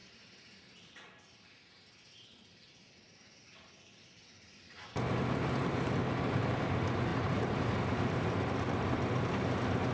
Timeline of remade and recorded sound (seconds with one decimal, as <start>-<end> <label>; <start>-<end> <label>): 0.0-0.9 remade; 0.9-7.1 recorded; 7.1-9.2 remade; 9.2-9.9 recorded